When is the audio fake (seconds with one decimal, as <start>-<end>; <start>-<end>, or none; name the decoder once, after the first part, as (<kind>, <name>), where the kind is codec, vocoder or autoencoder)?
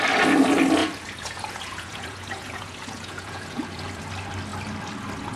0.8-4.0 (vocoder, Vocos)